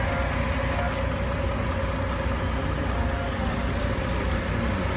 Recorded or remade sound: recorded